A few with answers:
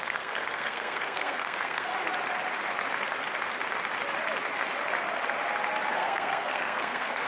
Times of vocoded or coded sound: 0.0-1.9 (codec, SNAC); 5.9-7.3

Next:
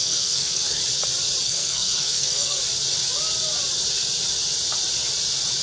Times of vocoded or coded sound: 0.0-0.8 (codec, SNAC); 1.4-2.6

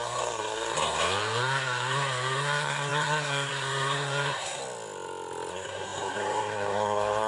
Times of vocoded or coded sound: 0.0-4.6 (codec, SNAC); 5.5-7.3

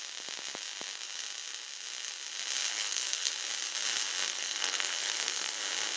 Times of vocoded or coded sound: 2.7-3.3 (codec, SNAC); 4.3-5.6

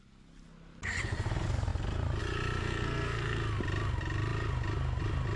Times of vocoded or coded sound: 2.6-3.4 (codec, SNAC)

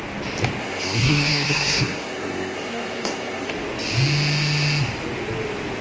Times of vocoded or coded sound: 0.6-3.5 (codec, SNAC)

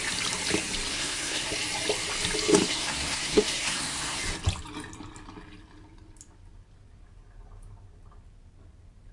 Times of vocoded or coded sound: 0.9-1.5 (codec, SNAC); 2.7-4.2